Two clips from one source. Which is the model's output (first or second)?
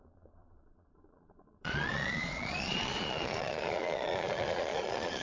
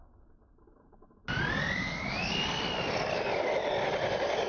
first